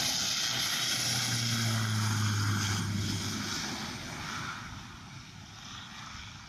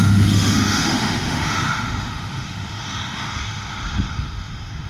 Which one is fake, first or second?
second